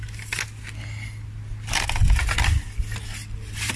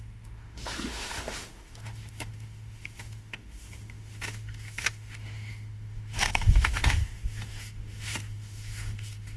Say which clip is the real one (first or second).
first